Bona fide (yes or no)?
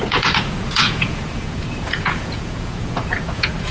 no